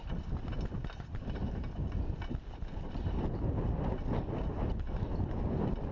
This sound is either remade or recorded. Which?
recorded